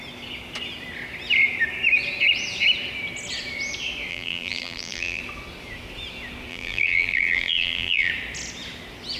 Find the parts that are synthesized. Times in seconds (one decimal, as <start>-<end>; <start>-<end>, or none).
4.1-5.2; 6.5-8.1